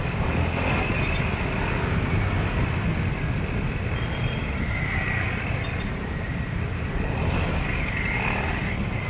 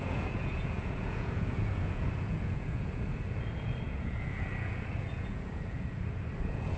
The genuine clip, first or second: first